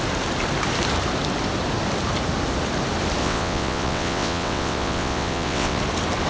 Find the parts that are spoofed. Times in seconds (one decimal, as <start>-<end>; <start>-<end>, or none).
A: 3.2-5.8